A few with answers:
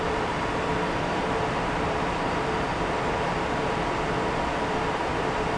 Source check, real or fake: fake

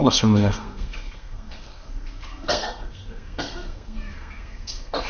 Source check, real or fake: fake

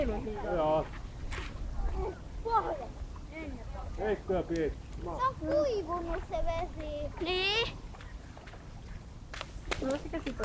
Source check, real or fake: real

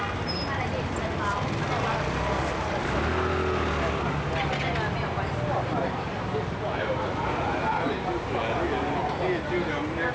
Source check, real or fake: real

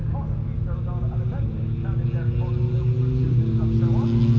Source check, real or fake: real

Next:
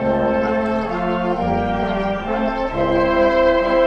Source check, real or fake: real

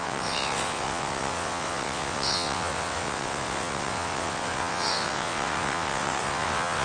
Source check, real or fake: fake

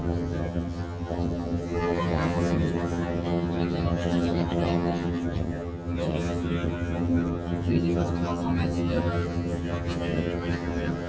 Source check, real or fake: fake